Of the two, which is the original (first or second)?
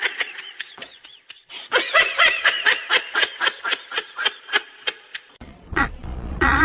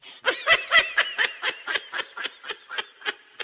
second